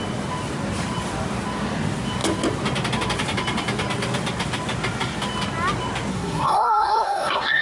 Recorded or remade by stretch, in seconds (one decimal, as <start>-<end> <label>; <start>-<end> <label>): 0.0-6.1 recorded; 6.1-7.6 remade